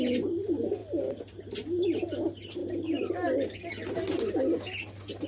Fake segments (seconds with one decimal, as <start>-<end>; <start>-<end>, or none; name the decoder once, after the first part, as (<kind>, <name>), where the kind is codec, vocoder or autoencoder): none